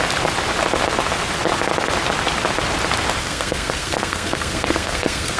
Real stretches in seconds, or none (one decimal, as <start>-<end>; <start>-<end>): 0.0-3.2